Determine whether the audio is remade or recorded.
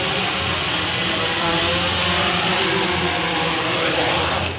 recorded